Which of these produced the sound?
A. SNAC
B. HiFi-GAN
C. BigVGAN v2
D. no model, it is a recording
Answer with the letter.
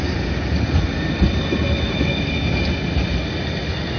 D